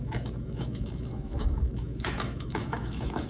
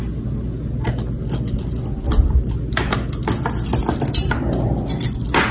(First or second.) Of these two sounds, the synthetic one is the first